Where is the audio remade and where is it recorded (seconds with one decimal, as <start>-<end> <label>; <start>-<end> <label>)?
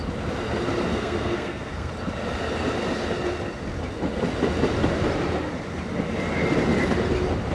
0.0-0.9 recorded; 0.9-1.9 remade; 1.9-7.5 recorded